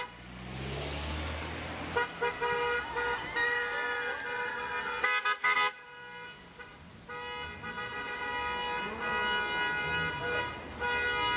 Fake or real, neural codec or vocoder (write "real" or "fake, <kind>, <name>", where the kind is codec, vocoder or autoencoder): real